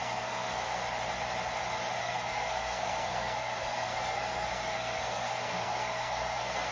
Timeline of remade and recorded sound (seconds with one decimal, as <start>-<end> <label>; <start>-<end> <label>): 0.0-0.8 remade; 0.8-2.0 recorded; 2.0-6.7 remade